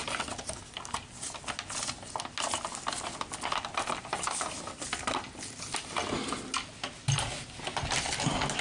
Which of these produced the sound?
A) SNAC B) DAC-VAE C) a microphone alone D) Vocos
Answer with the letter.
C